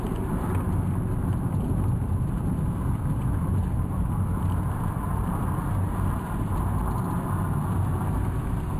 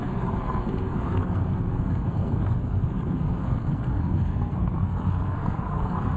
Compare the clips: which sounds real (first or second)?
first